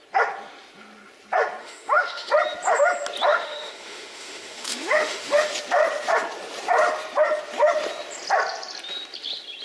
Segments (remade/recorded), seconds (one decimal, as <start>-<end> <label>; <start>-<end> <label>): 0.0-1.6 recorded; 1.6-2.3 remade; 2.3-3.3 recorded; 3.3-5.5 remade; 5.5-9.6 recorded